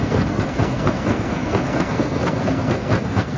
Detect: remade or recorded remade